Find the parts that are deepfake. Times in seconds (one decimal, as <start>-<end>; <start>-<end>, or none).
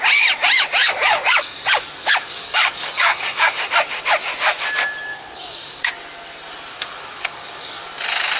0.8-3.7; 5.1-5.9; 6.7-7.8